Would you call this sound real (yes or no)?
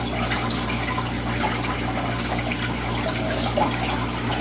yes